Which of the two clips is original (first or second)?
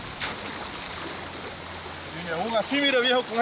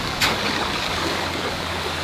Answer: first